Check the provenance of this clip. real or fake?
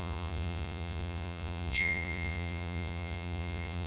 fake